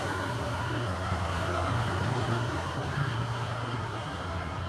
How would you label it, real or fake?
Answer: fake